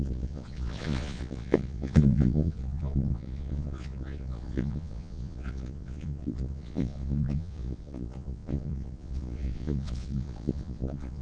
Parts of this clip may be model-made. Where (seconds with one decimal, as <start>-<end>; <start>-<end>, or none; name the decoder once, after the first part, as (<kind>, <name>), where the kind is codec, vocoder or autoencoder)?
0.0-11.2 (vocoder, Vocos)